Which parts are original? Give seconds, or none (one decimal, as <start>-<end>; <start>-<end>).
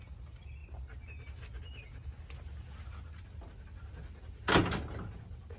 0.0-5.6